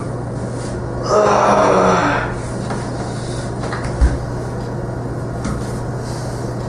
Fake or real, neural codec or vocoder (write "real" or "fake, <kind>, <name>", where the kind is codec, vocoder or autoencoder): real